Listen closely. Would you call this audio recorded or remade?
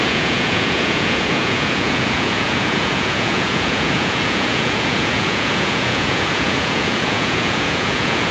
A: remade